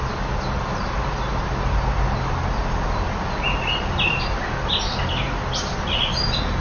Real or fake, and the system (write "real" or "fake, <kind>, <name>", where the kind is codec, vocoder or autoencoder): real